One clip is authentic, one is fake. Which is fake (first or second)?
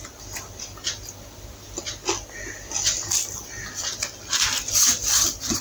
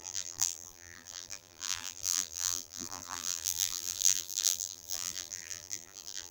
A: second